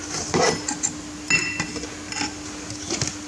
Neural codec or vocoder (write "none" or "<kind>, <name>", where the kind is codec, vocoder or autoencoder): none